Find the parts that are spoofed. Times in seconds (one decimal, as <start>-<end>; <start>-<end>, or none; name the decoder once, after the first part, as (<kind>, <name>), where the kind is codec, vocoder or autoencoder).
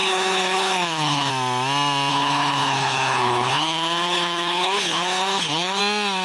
0.0-1.3 (codec, HILCodec); 2.1-5.8